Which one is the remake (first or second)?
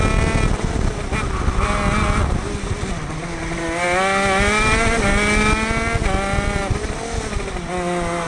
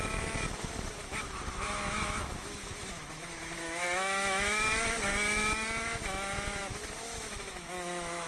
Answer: second